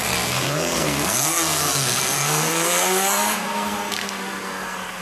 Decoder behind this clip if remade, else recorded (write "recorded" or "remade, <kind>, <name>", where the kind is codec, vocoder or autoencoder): remade, codec, SNAC